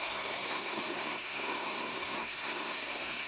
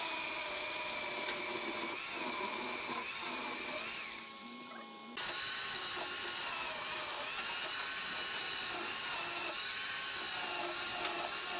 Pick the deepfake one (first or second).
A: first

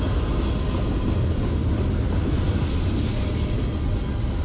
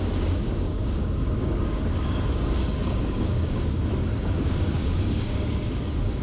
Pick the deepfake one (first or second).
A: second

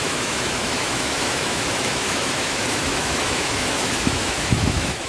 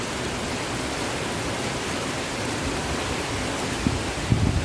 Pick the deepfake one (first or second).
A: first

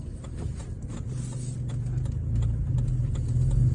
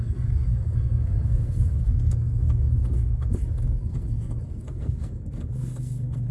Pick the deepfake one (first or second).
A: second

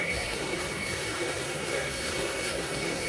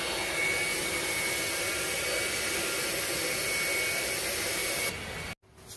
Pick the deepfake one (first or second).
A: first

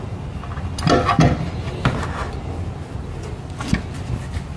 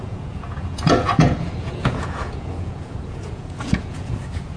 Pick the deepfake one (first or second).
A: second